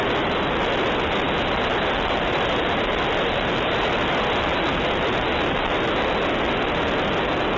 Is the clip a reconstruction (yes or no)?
no